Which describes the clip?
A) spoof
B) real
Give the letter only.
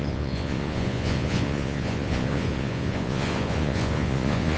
A